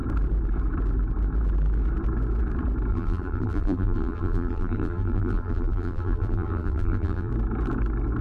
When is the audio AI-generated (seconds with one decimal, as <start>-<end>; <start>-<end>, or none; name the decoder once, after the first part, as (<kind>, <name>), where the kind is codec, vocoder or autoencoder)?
2.9-7.3 (vocoder, BigVGAN v2)